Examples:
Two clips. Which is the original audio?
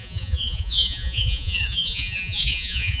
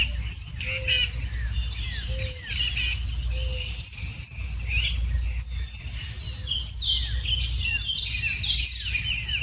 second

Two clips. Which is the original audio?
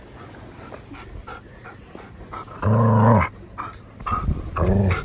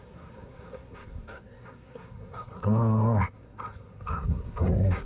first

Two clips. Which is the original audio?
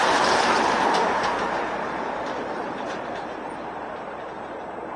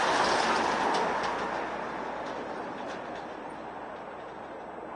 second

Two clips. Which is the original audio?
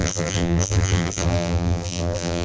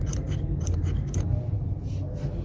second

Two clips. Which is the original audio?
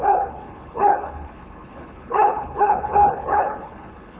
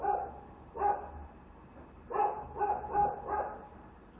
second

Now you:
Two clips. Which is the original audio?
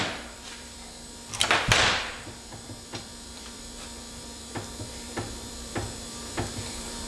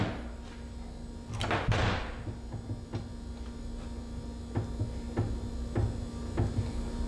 second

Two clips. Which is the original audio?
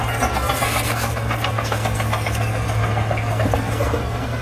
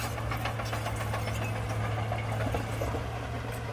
second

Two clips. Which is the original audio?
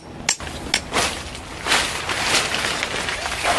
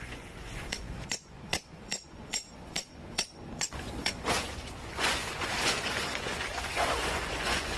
first